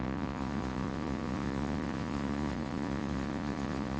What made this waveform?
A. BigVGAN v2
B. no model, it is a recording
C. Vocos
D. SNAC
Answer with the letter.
C